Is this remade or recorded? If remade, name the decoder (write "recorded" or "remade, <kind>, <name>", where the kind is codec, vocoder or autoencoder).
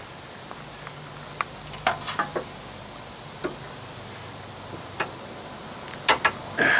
recorded